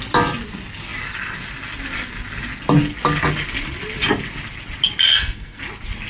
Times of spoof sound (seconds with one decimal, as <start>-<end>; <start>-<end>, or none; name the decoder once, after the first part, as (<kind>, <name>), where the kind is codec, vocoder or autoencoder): 5.1-5.6 (codec, SNAC)